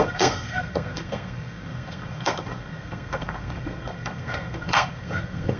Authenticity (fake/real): fake